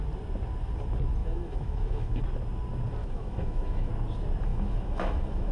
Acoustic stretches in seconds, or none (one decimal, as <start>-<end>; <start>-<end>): 0.0-1.2; 2.2-3.0; 3.9-4.5